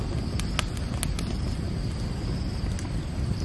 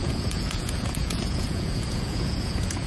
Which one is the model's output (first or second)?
second